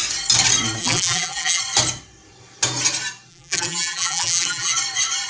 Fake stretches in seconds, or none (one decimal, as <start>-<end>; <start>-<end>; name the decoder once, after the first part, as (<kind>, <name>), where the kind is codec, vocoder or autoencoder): 0.8-1.6 (vocoder, BigVGAN v2); 3.3-4.7